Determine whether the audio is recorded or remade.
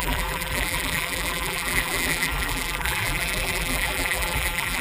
remade